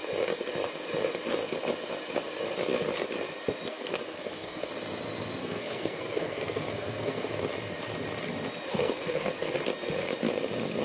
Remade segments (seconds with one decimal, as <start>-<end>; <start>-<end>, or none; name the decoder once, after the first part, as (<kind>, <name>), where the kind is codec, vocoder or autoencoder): 3.7-4.7 (codec, SNAC); 5.4-7.3; 8.7-9.5